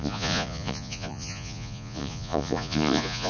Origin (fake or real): fake